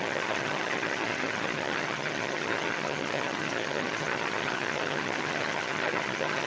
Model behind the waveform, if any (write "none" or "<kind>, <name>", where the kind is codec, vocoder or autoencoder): vocoder, HiFi-GAN